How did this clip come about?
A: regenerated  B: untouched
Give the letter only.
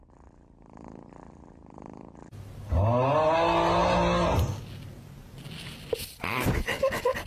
B